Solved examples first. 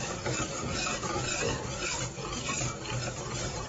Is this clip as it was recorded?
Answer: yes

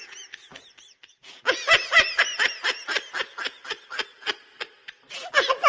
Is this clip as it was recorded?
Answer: yes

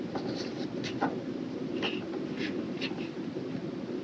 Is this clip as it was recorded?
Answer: yes